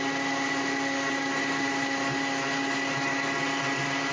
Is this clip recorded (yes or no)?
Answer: yes